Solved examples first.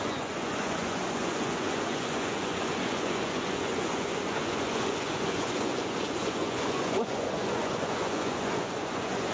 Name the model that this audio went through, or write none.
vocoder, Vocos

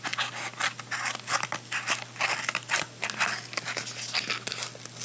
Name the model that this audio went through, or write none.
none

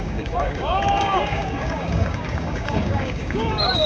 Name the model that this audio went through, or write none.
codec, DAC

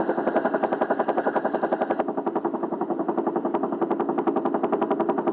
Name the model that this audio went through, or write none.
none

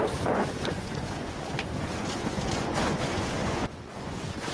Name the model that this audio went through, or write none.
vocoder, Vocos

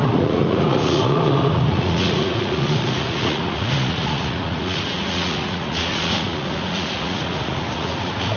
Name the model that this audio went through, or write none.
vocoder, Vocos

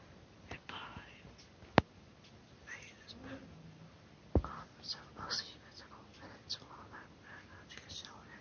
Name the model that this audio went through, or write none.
none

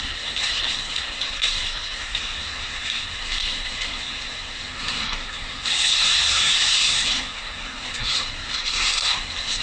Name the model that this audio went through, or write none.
codec, SNAC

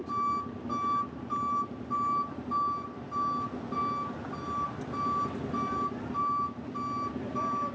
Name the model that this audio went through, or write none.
none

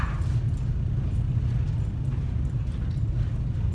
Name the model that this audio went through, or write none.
none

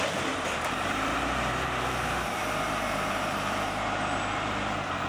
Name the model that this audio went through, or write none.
vocoder, BigVGAN v2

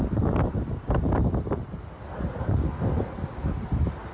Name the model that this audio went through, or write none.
none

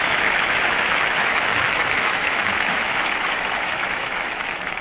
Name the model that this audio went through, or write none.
autoencoder, DAC-VAE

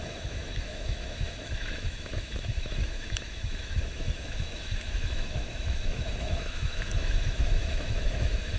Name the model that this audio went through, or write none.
autoencoder, DAC-VAE